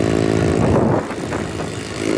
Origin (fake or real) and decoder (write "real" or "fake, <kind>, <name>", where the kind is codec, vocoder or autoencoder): real